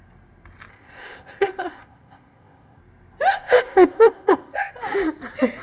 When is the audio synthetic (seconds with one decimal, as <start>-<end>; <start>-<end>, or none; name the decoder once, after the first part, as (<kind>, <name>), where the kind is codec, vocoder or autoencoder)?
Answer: 0.7-2.8 (codec, ZipCodec); 3.3-4.7